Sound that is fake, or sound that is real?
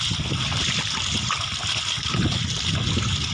real